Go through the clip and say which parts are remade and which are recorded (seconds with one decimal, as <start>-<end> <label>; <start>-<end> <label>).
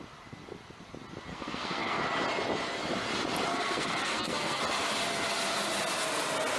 0.0-1.3 recorded; 1.3-2.0 remade; 2.0-3.5 recorded; 3.5-4.6 remade; 4.6-6.6 recorded